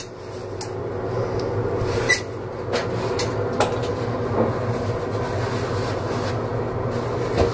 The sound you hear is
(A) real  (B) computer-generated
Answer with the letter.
A